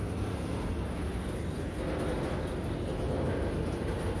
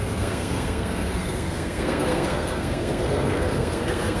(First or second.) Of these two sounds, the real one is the first